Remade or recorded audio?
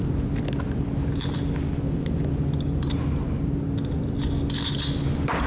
recorded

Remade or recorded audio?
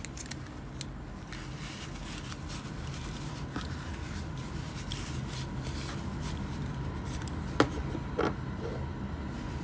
recorded